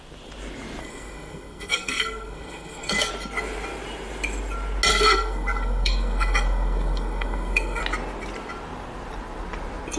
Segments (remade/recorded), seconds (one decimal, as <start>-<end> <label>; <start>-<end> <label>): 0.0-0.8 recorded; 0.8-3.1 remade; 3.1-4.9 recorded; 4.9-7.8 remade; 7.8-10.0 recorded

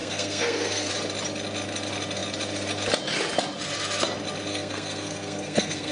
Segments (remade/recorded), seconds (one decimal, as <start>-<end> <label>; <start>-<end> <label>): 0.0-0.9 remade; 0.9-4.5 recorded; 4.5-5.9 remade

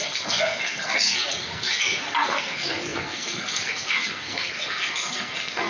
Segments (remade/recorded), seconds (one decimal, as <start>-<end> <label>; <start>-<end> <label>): 0.0-5.7 remade